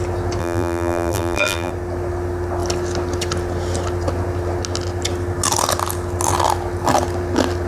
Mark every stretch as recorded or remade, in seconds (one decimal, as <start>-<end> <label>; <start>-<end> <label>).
0.0-0.4 recorded; 0.4-1.7 remade; 1.7-7.7 recorded